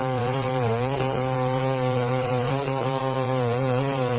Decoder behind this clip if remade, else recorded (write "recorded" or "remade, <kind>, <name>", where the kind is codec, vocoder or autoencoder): remade, vocoder, Vocos